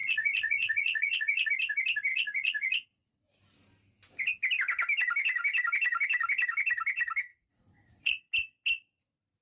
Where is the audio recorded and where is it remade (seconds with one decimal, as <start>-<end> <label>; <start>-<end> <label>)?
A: 0.0-1.5 remade; 1.5-2.1 recorded; 2.1-3.3 remade; 3.3-7.3 recorded; 7.3-8.2 remade; 8.2-9.4 recorded